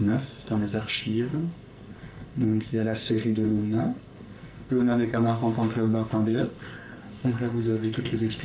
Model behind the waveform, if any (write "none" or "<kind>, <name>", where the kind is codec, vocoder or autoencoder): codec, SNAC